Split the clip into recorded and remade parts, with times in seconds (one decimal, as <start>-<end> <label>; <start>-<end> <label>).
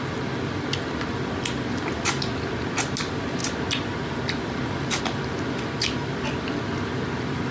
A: 0.0-7.5 recorded